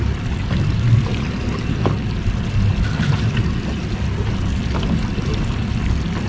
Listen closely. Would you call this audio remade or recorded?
recorded